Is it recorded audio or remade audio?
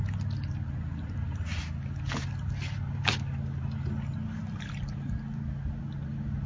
recorded